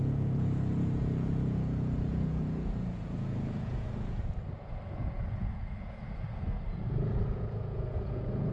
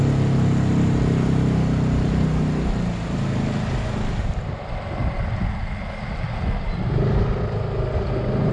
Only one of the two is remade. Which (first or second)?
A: first